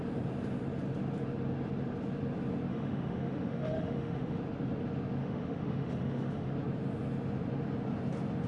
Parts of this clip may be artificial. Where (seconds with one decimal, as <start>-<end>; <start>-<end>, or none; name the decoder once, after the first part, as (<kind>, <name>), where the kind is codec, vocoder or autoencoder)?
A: 2.7-4.4 (autoencoder, DAC-VAE); 5.2-6.5